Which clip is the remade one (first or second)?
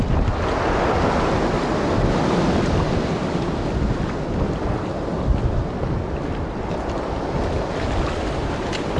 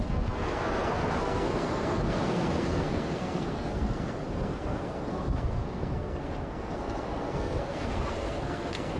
second